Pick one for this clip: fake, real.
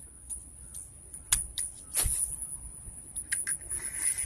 real